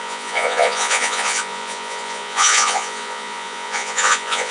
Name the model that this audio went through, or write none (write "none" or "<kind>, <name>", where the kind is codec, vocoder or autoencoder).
vocoder, Vocos